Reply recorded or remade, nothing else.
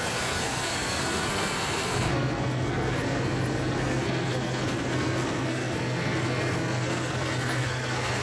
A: remade